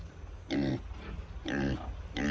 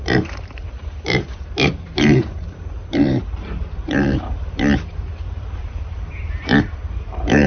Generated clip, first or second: second